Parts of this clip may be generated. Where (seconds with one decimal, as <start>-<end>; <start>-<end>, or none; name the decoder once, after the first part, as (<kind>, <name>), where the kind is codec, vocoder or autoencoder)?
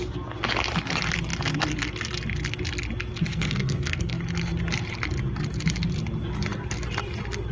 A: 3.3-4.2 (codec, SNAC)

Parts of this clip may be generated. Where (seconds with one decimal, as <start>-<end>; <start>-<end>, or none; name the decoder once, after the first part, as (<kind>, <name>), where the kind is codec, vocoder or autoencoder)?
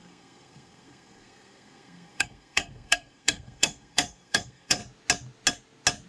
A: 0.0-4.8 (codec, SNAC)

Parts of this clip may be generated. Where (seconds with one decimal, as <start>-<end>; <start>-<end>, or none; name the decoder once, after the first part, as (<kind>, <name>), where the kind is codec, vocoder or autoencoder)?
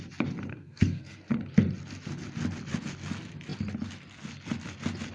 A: 0.5-1.2 (codec, SNAC)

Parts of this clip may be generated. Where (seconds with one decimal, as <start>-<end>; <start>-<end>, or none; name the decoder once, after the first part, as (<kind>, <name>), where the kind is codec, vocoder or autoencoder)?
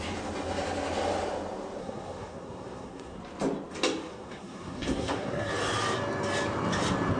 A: 1.8-3.2 (codec, SNAC); 4.1-5.5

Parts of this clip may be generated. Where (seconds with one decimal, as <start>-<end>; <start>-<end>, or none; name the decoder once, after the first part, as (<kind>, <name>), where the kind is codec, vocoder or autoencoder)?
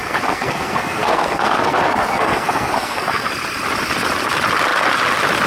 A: 0.0-3.3 (codec, SNAC)